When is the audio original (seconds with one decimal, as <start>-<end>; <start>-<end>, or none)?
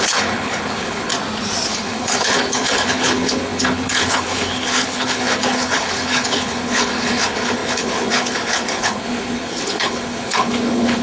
1.1-1.7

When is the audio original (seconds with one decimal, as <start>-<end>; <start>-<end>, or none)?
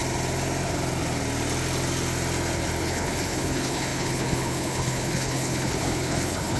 0.0-2.8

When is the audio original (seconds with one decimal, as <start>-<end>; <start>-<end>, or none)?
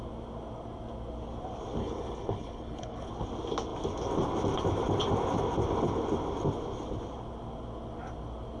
0.0-1.8; 3.1-8.6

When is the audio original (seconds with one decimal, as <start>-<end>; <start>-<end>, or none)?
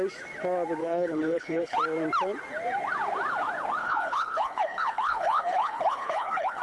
0.0-0.8; 1.8-3.8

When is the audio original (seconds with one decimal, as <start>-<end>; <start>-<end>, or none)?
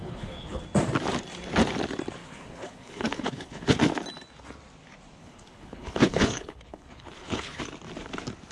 0.6-2.2; 3.8-5.2; 7.6-8.5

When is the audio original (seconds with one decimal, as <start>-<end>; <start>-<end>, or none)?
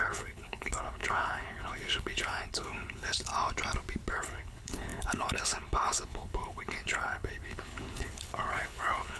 3.3-4.1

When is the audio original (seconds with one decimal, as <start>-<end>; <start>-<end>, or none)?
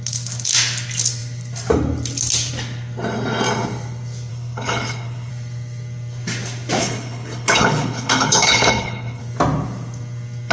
0.0-4.3; 5.3-6.8; 9.2-10.5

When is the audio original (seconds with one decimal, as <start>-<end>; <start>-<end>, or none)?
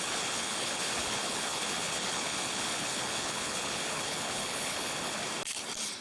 5.2-6.0